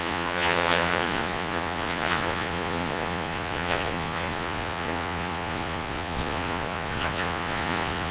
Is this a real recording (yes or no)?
no